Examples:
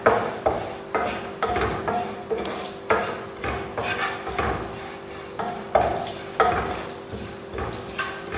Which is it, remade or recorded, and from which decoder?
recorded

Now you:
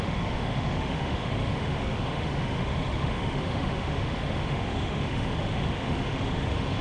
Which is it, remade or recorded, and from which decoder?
remade, autoencoder, DAC-VAE